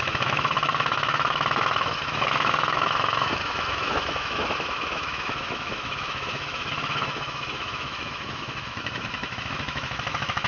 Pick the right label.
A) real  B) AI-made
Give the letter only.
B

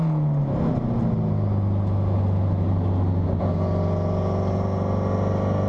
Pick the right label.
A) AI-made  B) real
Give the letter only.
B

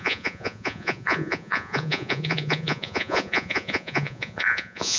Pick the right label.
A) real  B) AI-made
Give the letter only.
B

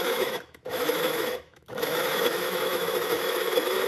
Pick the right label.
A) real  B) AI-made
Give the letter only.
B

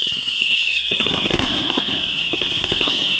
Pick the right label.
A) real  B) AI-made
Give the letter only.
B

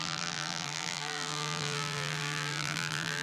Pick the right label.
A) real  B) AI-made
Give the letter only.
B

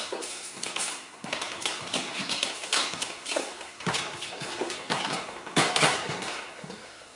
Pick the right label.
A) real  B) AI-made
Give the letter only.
B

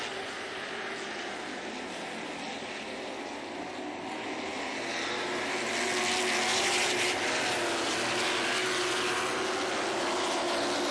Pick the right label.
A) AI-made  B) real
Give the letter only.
B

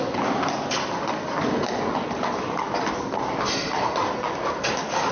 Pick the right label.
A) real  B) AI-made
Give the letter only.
A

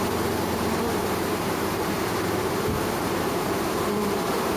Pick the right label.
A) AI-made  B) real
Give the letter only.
A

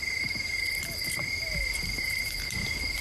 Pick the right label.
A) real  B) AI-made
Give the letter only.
B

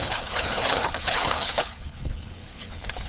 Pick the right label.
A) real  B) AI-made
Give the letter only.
B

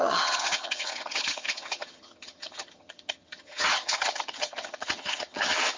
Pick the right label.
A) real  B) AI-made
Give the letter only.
B